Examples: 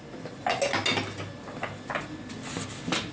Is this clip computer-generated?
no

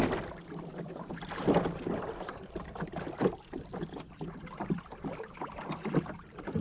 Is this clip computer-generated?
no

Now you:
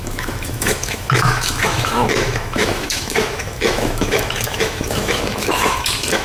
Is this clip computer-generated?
yes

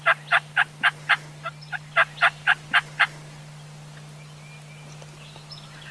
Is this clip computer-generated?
no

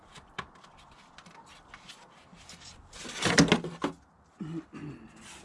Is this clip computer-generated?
no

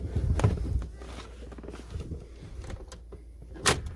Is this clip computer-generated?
no